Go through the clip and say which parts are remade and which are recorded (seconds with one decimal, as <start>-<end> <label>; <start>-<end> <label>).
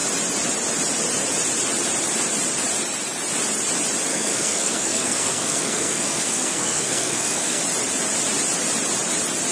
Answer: 0.0-4.1 recorded; 4.1-7.6 remade; 7.6-9.5 recorded